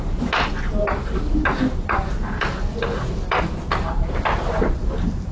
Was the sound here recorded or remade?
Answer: recorded